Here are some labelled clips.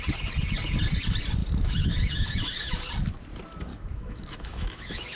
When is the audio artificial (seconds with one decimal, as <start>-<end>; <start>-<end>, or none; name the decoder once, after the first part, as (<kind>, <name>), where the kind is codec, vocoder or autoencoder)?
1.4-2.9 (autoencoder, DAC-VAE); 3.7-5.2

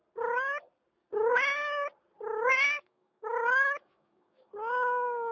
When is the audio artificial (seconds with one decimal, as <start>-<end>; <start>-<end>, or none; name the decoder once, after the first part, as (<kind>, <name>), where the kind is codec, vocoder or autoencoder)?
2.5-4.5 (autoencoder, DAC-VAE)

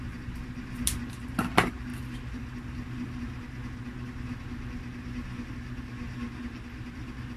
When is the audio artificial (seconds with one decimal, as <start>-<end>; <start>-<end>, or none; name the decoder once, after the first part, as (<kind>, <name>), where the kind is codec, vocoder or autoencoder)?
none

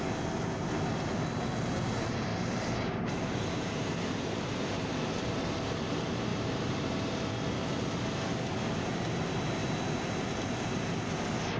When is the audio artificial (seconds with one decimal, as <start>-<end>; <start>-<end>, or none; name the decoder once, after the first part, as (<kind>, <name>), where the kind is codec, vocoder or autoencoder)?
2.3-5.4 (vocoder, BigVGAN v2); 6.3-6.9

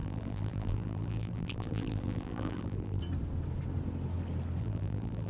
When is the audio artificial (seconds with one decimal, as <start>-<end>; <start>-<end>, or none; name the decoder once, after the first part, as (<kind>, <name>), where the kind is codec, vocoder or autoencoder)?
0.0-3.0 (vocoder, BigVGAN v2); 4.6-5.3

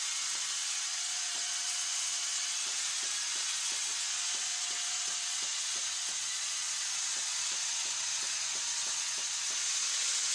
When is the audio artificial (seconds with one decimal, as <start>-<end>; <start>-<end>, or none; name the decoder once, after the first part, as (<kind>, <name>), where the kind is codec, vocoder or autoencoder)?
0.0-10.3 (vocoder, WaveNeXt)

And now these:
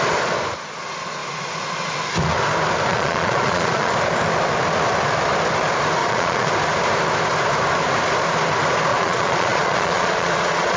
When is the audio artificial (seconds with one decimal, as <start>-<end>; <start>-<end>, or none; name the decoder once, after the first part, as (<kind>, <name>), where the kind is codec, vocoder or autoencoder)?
2.9-3.9 (vocoder, Vocos); 6.0-6.5; 8.9-10.8